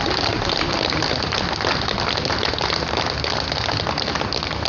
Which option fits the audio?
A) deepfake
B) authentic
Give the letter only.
B